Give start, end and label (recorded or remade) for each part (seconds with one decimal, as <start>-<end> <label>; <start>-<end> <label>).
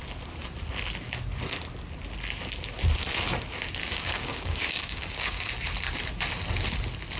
0.0-3.8 recorded; 3.8-5.5 remade; 5.5-7.2 recorded